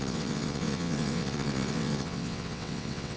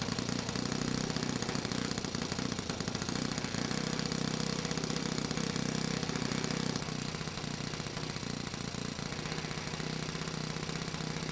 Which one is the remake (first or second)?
first